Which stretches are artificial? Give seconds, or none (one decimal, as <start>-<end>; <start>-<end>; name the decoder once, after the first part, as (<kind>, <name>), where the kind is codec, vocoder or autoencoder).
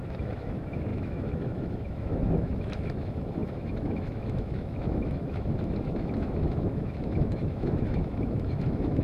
0.0-9.0 (autoencoder, DAC-VAE)